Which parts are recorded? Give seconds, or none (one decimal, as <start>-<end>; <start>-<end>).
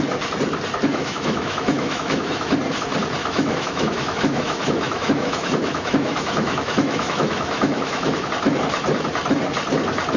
0.0-0.8; 2.5-3.2; 8.3-10.2